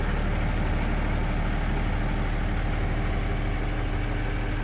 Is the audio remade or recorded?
recorded